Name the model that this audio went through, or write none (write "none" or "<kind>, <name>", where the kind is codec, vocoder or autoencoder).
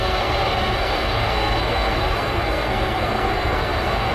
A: codec, SNAC